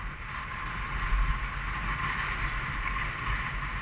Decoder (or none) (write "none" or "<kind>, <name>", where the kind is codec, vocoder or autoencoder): none